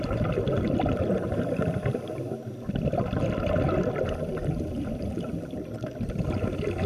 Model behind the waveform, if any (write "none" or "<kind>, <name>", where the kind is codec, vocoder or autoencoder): none